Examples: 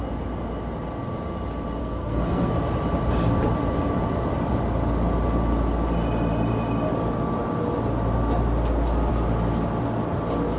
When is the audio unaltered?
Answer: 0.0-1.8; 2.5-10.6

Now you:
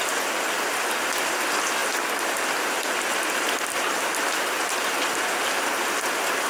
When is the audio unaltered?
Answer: 0.0-6.5

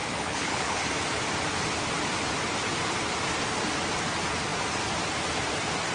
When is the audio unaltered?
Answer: 0.9-5.9

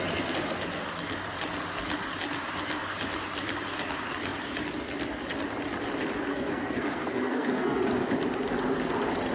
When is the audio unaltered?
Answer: 0.0-6.3; 7.9-9.3

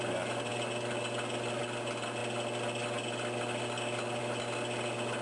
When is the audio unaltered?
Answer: 0.0-5.2

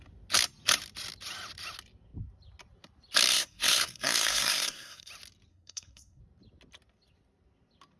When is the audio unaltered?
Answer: 0.0-3.3; 5.1-5.5; 6.2-8.0